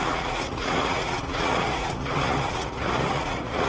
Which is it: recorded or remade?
remade